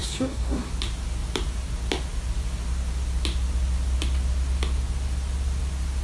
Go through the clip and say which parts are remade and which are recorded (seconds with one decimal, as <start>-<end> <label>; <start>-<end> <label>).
0.0-0.7 remade; 0.7-6.0 recorded